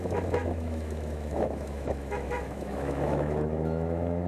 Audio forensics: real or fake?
fake